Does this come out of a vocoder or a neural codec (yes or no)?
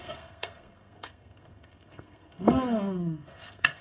yes